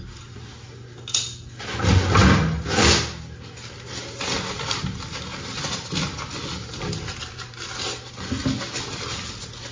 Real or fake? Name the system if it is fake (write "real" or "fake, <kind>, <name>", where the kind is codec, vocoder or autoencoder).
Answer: real